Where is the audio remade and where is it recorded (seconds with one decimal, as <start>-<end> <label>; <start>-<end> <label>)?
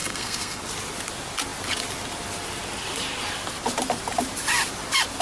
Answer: 0.0-0.6 remade; 0.6-5.2 recorded